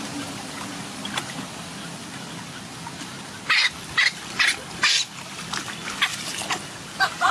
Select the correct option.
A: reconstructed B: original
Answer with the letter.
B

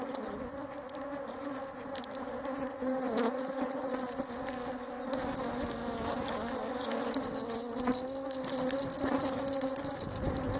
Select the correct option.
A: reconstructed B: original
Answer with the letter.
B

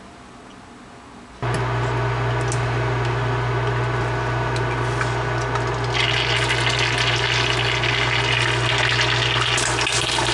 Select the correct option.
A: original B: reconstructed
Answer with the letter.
A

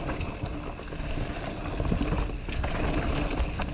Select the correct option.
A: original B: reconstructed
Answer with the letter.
A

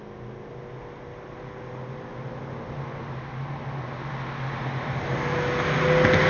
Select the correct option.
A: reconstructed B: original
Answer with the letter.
B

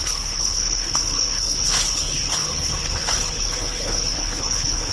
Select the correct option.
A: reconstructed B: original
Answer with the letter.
A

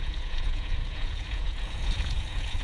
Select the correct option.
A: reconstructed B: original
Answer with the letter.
A